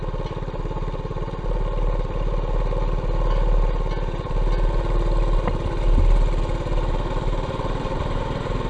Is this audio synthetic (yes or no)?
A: no